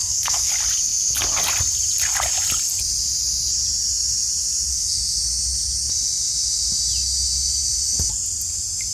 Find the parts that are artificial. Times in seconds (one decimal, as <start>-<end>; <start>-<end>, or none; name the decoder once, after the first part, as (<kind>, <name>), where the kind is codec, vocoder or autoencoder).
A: 0.0-0.5 (codec, SNAC); 4.7-5.2